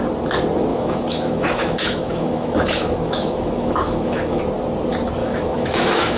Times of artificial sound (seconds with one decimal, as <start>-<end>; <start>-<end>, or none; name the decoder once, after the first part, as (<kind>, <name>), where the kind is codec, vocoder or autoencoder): 0.7-4.4 (autoencoder, DAC-VAE); 5.2-6.2